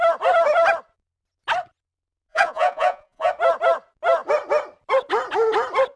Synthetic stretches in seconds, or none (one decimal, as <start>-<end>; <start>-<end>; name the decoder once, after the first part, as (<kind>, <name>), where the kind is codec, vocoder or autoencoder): 2.3-3.3 (vocoder, Vocos)